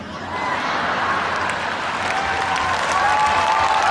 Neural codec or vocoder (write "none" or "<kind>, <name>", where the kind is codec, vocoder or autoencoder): none